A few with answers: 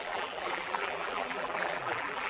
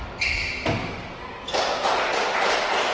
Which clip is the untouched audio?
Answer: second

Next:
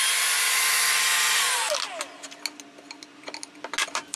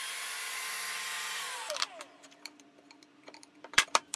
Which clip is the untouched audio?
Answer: first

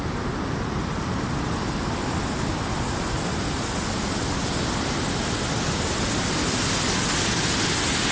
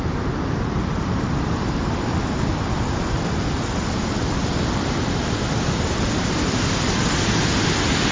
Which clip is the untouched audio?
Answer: first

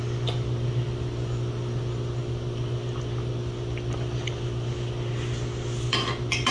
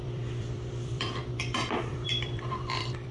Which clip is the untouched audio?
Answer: first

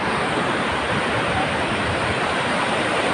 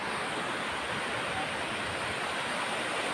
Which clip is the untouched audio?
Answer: second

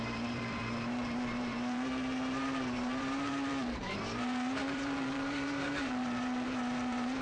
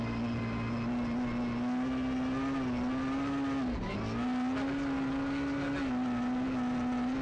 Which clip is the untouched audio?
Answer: second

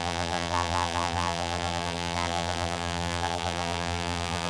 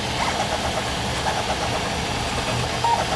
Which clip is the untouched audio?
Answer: second